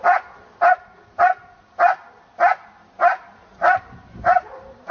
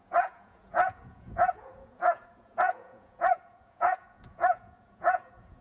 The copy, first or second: second